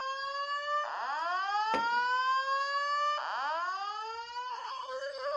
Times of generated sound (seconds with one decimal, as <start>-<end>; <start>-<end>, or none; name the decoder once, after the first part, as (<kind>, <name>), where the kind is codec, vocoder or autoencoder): 4.5-5.4 (codec, SNAC)